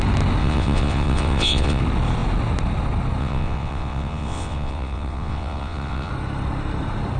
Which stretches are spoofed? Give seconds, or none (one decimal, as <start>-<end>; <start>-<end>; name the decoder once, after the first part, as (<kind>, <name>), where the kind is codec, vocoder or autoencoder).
0.4-1.8 (vocoder, WaveNeXt); 3.2-6.1